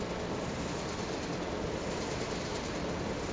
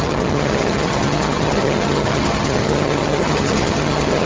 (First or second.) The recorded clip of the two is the first